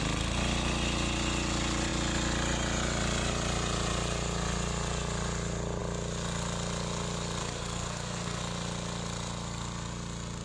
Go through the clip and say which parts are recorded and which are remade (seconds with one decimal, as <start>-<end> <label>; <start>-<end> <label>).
0.0-7.4 recorded; 7.4-8.4 remade; 8.4-10.4 recorded